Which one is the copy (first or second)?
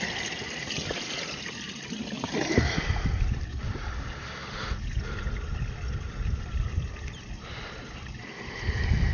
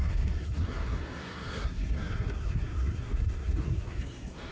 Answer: second